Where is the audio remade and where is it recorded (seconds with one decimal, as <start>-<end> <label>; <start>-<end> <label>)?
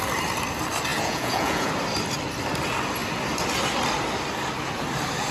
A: 0.0-0.9 recorded; 0.9-1.7 remade; 1.7-5.3 recorded